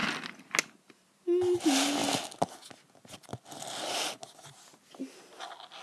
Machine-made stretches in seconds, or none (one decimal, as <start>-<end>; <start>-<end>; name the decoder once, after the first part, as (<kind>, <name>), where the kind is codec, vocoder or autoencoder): none